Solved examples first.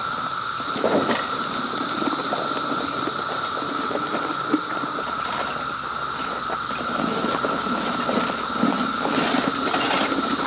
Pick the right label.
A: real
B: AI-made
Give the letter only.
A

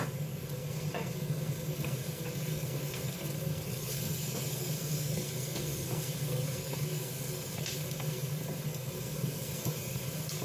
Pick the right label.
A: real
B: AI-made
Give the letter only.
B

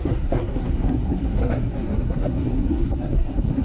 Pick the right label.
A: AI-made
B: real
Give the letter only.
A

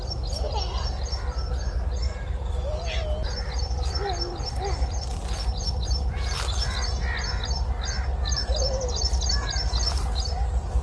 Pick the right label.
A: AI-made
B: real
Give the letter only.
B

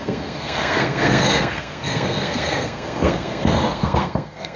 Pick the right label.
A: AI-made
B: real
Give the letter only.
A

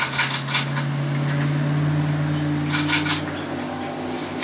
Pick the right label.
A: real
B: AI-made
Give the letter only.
A